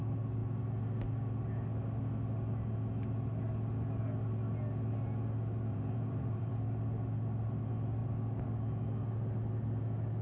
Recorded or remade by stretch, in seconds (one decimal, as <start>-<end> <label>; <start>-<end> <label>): 0.0-5.7 recorded; 5.7-6.5 remade; 6.5-10.2 recorded